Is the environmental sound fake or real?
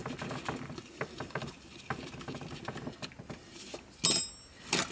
real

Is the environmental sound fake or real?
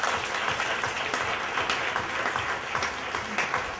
real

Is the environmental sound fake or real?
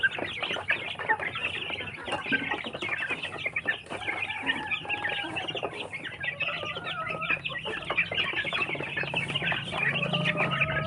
real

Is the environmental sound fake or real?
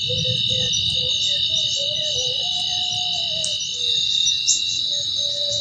real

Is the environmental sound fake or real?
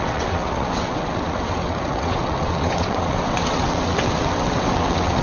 fake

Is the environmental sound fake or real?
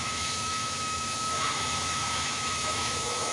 fake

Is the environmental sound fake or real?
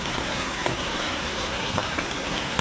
fake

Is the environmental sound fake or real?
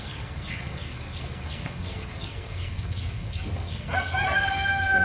fake